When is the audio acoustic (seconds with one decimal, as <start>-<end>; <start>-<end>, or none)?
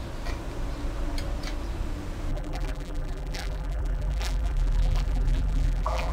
0.0-2.3